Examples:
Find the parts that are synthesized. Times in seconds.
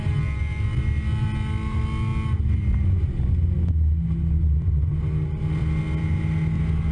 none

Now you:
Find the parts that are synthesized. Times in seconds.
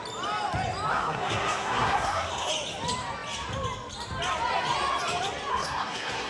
0.9-2.5 (codec, SNAC); 5.5-6.3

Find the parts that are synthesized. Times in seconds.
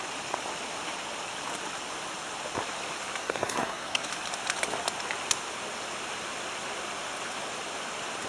3.2-4.1 (codec, SNAC)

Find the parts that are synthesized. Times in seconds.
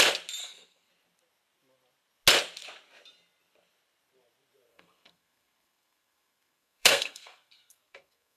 0.4-0.9 (codec, SNAC); 4.7-8.4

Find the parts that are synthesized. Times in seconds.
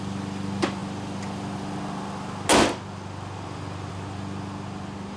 none